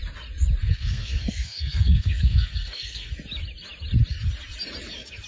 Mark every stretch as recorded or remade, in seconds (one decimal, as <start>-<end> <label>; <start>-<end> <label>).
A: 0.0-0.6 recorded; 0.6-3.1 remade; 3.1-5.3 recorded